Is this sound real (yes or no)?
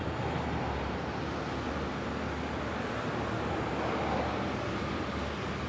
yes